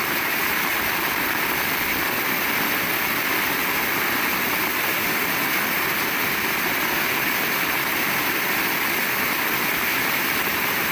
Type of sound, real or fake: real